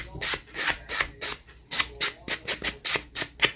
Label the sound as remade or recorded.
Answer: recorded